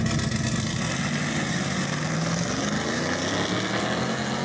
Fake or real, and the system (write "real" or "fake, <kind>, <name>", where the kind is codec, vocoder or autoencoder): real